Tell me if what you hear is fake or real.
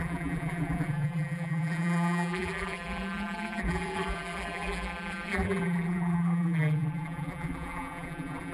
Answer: fake